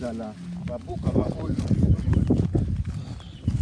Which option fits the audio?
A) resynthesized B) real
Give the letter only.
B